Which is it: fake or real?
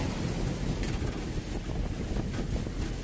real